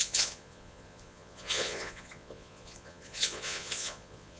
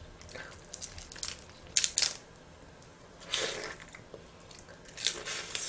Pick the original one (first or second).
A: second